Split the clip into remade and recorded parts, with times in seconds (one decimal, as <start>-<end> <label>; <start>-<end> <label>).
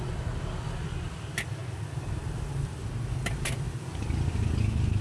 0.0-5.0 recorded